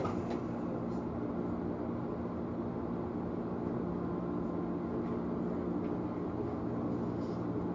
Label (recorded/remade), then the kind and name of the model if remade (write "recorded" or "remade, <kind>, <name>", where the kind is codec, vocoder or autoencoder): recorded